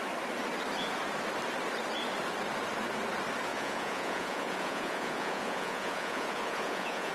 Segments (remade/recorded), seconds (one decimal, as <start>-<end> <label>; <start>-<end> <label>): 0.0-3.5 recorded; 3.5-7.1 remade